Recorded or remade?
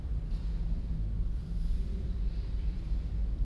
remade